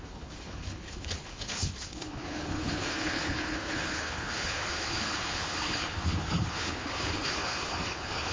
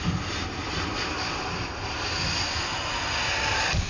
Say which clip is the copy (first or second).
first